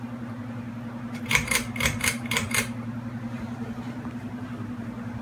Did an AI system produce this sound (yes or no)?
yes